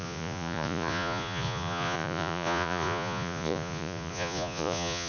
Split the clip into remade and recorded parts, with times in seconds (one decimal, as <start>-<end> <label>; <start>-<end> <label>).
0.0-5.1 remade